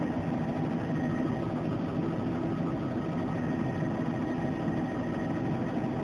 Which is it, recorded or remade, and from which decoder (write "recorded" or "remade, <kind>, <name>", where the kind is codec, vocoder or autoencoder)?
recorded